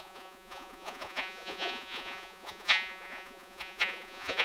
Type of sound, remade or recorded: remade